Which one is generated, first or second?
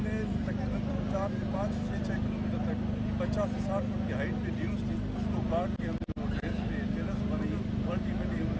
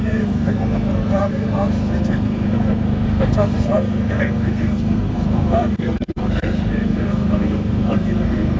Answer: second